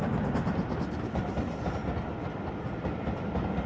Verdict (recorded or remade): recorded